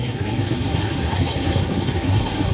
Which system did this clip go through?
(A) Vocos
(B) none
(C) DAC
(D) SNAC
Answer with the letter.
D